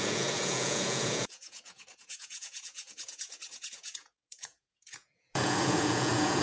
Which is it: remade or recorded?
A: remade